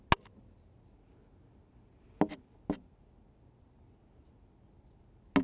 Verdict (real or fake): real